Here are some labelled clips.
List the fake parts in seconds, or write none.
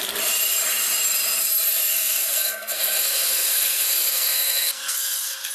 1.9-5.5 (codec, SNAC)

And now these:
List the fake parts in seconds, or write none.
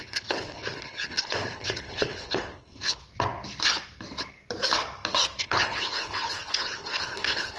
0.0-3.0 (codec, HILCodec); 5.4-7.6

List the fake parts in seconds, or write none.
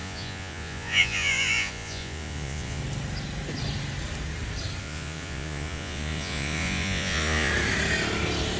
0.0-2.8 (vocoder, Vocos); 4.8-7.5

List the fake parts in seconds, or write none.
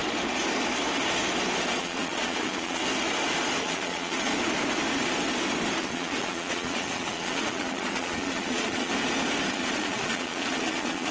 1.8-2.8 (vocoder, Vocos); 3.6-4.3; 5.8-8.9; 9.5-11.1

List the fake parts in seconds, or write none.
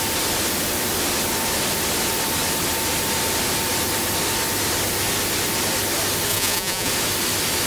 6.3-6.9 (vocoder, Vocos)